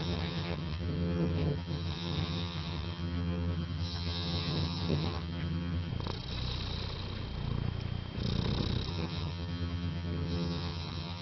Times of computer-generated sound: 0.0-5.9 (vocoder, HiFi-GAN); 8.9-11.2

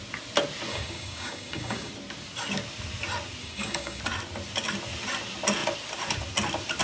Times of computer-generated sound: 0.7-1.9 (codec, DAC); 3.4-4.0